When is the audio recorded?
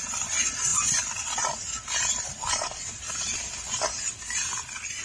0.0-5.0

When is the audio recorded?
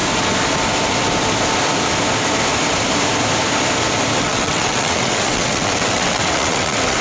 0.0-4.2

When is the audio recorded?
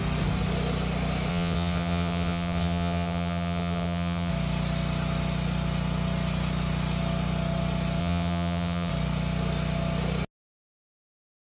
0.0-1.3; 4.3-8.0; 8.9-11.5